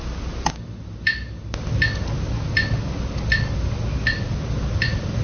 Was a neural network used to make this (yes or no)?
no